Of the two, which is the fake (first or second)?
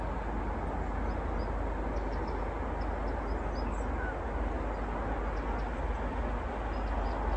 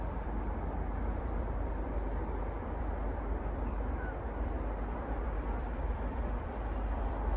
second